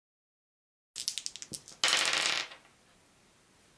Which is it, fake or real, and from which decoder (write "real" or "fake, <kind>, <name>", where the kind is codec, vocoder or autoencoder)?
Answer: real